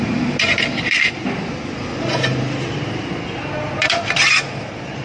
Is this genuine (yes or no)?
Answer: yes